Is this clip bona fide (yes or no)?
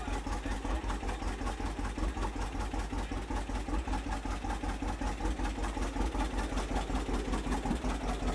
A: yes